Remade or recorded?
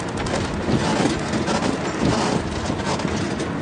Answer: recorded